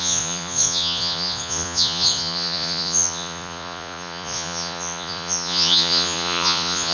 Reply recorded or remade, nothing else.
remade